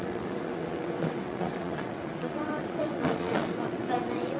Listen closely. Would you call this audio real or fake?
fake